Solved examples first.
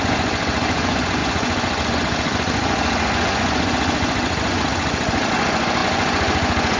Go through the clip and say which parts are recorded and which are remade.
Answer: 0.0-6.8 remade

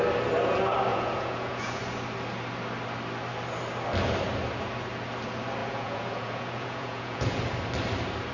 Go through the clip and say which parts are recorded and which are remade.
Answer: 0.0-0.9 recorded; 0.9-1.8 remade; 1.8-5.6 recorded; 5.6-7.4 remade; 7.4-8.3 recorded

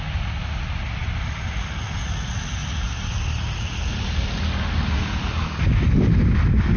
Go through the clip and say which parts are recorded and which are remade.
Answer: 0.0-6.8 recorded

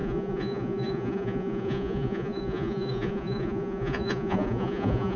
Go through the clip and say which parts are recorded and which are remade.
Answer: 0.0-5.2 remade

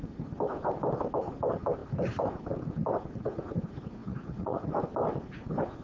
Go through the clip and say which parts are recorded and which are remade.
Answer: 0.0-4.0 recorded; 4.0-4.7 remade; 4.7-5.8 recorded

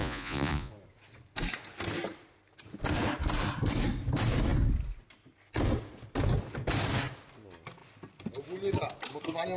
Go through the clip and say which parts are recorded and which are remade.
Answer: 0.0-0.7 remade; 0.7-9.6 recorded